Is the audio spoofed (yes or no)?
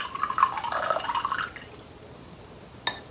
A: no